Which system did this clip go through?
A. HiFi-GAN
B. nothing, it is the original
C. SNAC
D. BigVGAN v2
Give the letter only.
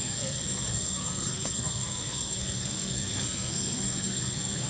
C